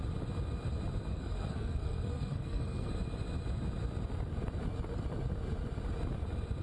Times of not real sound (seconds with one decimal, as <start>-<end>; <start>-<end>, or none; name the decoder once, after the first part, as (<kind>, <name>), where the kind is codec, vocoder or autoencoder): 1.1-2.9 (codec, SNAC)